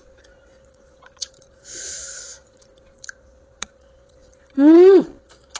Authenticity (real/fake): fake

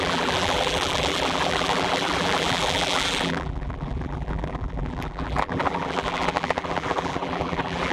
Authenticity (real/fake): fake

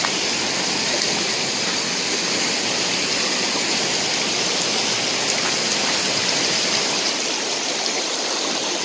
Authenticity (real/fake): real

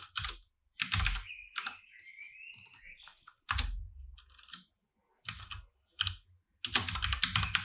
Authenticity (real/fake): real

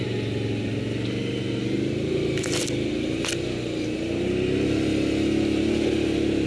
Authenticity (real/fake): real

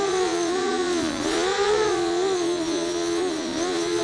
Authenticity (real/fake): fake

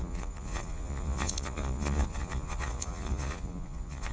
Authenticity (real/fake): fake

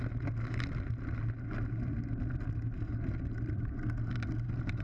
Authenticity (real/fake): real